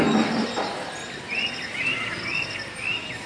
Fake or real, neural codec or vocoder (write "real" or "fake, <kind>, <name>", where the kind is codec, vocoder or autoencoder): real